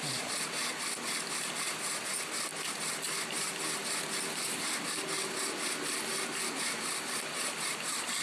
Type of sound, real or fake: real